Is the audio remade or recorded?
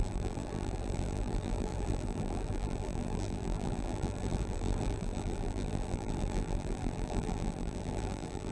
remade